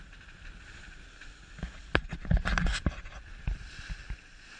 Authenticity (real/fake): real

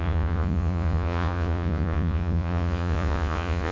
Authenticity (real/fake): fake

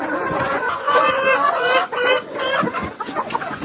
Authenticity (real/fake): fake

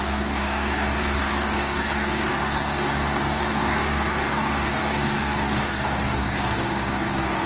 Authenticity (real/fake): fake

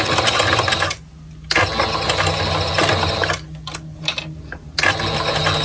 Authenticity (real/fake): real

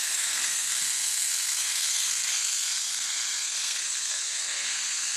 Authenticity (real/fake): fake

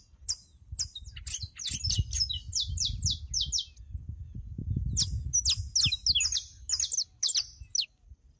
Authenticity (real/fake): real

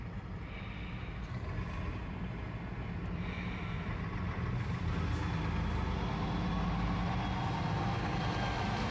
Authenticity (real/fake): real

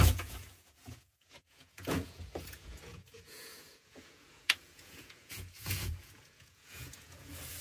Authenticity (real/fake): fake